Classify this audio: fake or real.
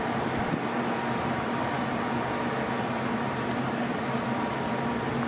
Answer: real